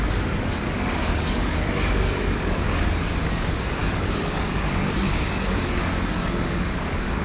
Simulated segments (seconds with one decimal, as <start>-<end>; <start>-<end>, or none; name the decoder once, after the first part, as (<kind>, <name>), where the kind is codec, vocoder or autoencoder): 0.0-7.2 (codec, DAC)